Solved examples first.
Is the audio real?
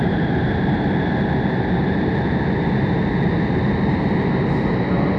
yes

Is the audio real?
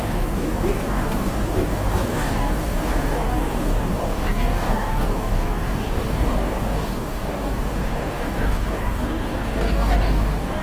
no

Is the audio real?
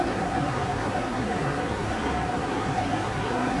no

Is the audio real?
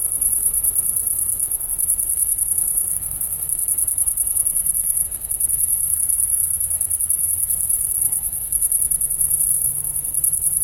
no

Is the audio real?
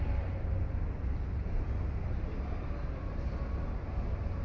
yes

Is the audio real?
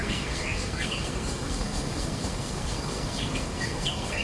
no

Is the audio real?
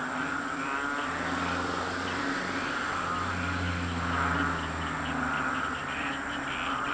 yes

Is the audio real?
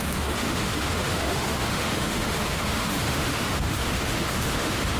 no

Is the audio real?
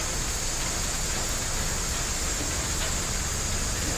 yes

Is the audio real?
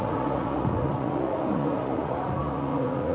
no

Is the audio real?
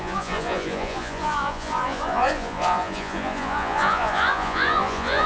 no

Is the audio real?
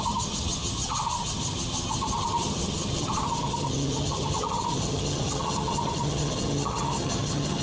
no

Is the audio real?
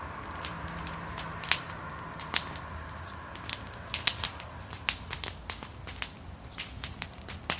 yes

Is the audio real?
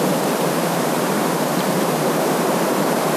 no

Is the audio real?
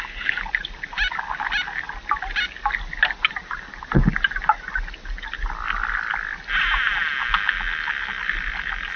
yes